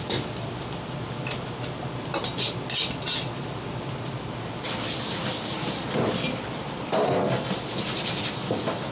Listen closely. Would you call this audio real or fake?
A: real